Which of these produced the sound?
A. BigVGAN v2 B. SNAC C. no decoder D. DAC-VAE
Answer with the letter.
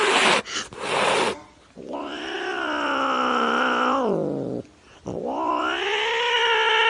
C